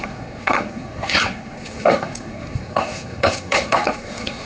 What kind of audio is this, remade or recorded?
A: remade